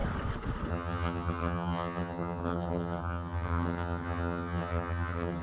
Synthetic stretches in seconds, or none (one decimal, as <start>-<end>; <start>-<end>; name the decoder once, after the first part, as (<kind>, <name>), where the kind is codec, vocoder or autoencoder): 0.7-5.4 (vocoder, HiFi-GAN)